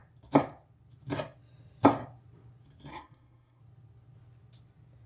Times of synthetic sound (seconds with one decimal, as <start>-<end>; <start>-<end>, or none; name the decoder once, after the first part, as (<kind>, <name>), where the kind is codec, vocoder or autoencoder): 2.9-3.6 (codec, SNAC)